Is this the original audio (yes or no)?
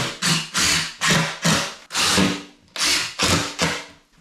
yes